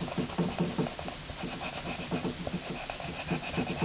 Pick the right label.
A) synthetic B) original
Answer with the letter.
B